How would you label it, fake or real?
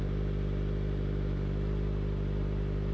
real